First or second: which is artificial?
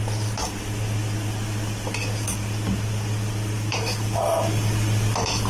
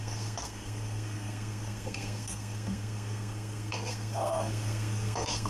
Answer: second